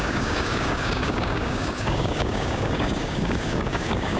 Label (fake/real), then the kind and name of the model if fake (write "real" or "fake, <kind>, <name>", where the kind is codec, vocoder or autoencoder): fake, codec, DAC